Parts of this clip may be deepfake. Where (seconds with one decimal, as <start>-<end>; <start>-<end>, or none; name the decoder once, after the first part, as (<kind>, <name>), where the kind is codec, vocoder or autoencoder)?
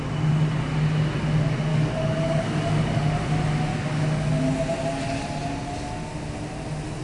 1.7-3.0 (codec, DAC); 3.7-4.4